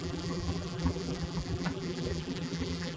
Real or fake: fake